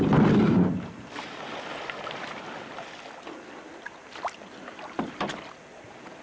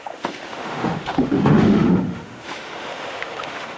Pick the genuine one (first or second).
first